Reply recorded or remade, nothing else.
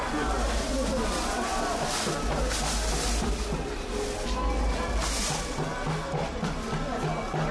recorded